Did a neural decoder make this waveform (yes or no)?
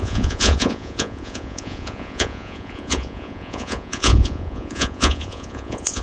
yes